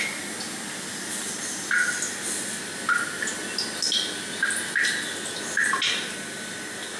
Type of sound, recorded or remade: recorded